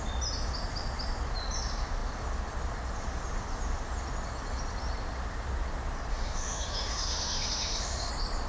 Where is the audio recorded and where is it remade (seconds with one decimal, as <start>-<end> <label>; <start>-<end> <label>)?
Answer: 0.0-6.1 recorded; 6.1-8.1 remade; 8.1-8.5 recorded